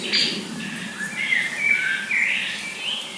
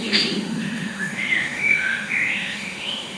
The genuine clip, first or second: first